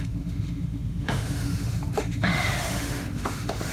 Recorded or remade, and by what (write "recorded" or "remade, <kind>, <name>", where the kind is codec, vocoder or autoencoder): remade, autoencoder, DAC-VAE